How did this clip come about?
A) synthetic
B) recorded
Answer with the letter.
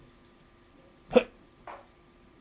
B